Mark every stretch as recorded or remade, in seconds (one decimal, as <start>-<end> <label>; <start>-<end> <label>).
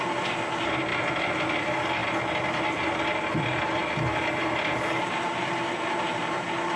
0.0-0.9 remade; 0.9-1.6 recorded; 1.6-2.0 remade; 2.0-3.4 recorded; 3.4-3.8 remade; 3.8-4.9 recorded; 4.9-6.8 remade